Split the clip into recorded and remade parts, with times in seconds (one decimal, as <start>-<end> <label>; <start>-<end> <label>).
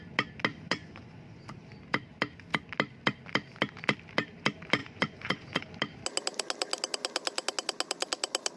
0.0-0.5 recorded; 0.5-1.6 remade; 1.6-4.8 recorded; 4.8-5.7 remade; 5.7-8.6 recorded